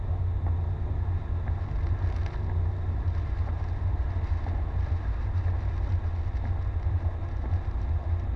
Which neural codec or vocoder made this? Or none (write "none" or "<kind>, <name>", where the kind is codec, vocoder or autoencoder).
none